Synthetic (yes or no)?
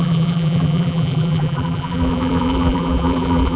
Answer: yes